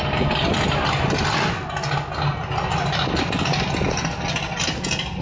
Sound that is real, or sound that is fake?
real